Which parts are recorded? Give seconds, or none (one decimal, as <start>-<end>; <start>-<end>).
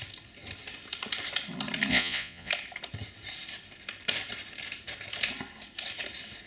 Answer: 0.0-1.9; 2.5-6.5